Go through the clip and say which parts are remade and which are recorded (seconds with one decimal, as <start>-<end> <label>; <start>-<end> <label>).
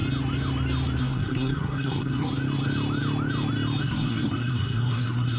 0.0-1.0 recorded; 1.0-2.3 remade; 2.3-3.8 recorded; 3.8-5.4 remade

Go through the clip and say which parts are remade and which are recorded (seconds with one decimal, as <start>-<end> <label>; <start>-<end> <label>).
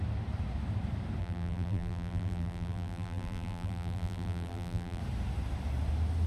0.0-1.2 recorded; 1.2-5.0 remade; 5.0-6.3 recorded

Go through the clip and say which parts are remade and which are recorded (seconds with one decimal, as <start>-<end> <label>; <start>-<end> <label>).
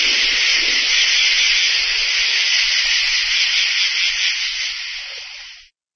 0.0-0.5 recorded; 0.5-1.5 remade; 1.5-6.0 recorded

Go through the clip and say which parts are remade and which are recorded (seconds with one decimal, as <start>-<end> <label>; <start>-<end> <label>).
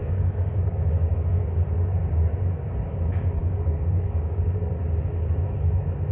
0.0-1.1 remade; 1.1-3.4 recorded; 3.4-4.8 remade; 4.8-6.1 recorded